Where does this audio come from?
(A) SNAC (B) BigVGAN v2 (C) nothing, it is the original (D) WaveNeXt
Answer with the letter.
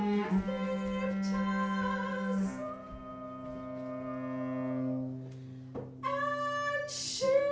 C